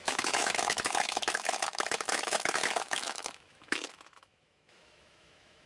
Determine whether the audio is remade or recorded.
remade